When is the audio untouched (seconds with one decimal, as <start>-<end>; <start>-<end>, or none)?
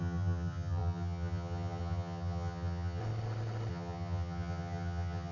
3.0-3.7